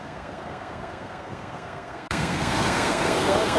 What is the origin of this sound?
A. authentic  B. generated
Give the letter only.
B